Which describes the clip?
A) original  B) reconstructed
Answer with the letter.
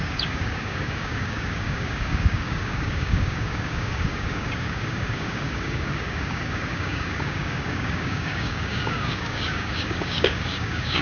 B